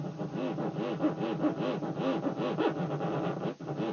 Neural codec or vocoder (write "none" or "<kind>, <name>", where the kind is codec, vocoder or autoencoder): none